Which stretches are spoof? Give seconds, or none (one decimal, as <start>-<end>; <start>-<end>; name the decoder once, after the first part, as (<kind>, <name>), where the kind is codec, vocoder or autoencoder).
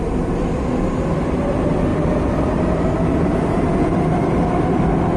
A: none